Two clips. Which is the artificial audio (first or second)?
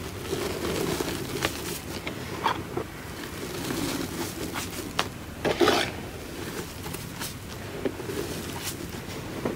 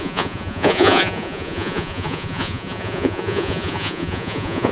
second